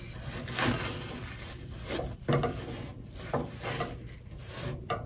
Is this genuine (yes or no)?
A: yes